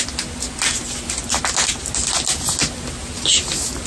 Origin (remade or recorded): recorded